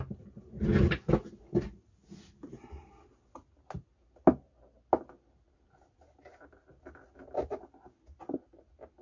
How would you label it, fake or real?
real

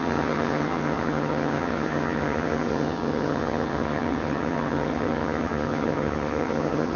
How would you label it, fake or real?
fake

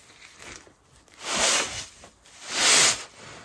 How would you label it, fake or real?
real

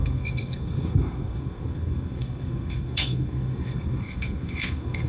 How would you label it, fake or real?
fake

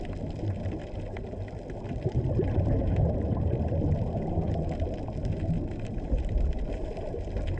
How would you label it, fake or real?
real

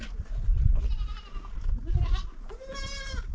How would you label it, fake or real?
real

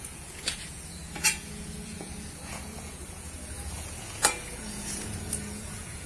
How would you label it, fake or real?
fake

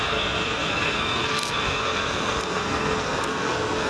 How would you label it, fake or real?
fake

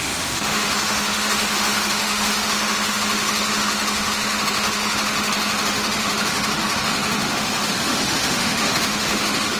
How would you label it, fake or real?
fake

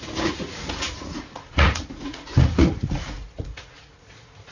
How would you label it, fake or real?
fake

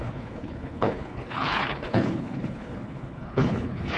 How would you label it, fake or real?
fake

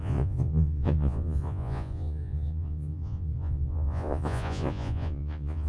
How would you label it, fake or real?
fake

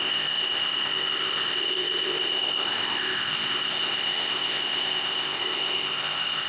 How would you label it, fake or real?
fake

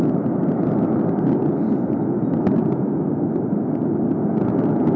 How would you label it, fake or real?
real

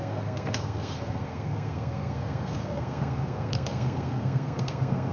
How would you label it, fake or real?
fake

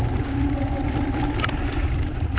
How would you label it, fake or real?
real